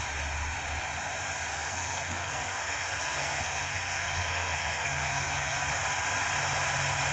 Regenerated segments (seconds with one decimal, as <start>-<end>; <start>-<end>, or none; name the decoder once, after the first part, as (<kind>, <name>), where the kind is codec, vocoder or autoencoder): 1.5-5.7 (codec, SNAC)